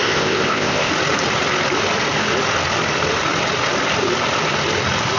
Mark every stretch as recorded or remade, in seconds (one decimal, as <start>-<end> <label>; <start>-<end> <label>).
0.0-0.9 remade; 0.9-5.2 recorded